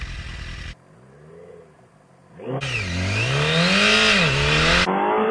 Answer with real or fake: real